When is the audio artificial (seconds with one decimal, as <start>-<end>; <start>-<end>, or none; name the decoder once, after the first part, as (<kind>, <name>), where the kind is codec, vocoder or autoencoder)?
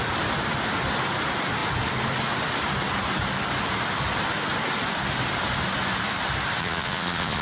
6.6-7.4 (vocoder, Vocos)